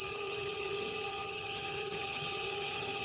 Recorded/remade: remade